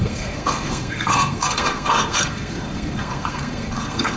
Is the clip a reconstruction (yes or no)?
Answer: yes